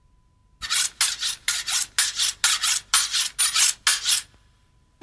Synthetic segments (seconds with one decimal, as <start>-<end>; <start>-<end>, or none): none